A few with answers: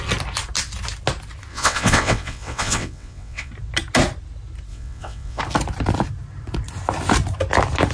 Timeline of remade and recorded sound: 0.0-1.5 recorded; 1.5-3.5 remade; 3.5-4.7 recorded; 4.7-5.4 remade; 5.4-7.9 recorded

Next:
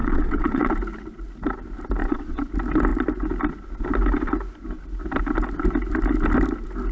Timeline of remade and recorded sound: 0.0-0.7 remade; 0.7-2.0 recorded; 2.0-2.5 remade; 2.5-6.9 recorded

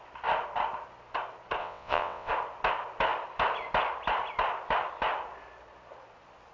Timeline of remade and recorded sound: 0.0-1.6 recorded; 1.6-2.3 remade; 2.3-6.5 recorded